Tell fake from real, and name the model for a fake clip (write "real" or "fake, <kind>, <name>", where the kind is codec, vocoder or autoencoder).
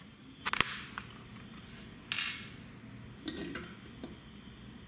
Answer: real